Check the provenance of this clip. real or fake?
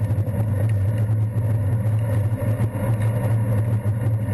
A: real